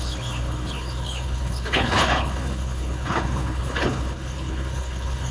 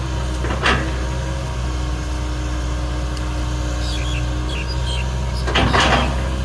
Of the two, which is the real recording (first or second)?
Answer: second